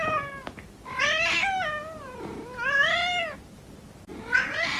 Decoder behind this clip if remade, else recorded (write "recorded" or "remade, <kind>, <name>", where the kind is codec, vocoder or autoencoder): recorded